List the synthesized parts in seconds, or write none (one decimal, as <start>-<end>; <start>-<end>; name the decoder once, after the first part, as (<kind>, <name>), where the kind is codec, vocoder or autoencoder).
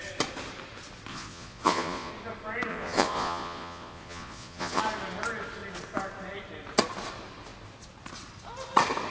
1.1-2.1 (vocoder, Vocos); 2.7-4.8